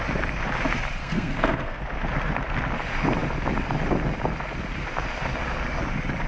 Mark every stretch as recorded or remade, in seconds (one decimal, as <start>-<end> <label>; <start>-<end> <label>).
0.0-1.0 recorded; 1.0-1.8 remade; 1.8-6.3 recorded